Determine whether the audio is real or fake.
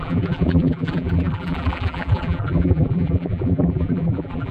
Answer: fake